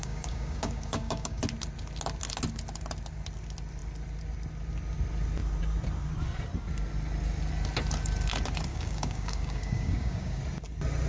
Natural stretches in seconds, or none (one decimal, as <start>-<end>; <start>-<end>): 1.4-8.7; 10.4-11.1